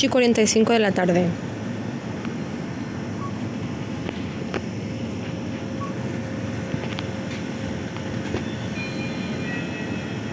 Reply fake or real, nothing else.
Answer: real